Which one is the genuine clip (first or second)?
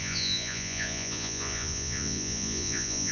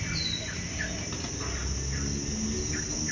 second